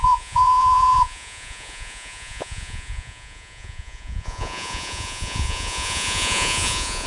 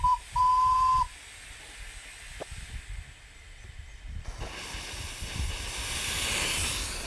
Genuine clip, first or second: second